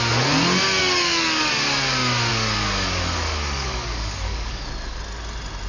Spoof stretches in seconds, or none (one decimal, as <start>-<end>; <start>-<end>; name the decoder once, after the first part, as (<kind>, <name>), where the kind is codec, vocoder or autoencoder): 0.8-1.5 (codec, DAC); 2.3-4.6